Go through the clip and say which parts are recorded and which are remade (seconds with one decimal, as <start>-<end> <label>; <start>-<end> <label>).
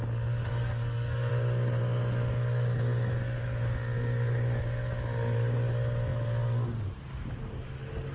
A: 0.0-0.5 recorded; 0.5-1.3 remade; 1.3-8.1 recorded